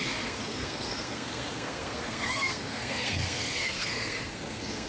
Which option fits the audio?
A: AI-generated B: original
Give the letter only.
A